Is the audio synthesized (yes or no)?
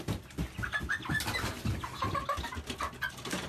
no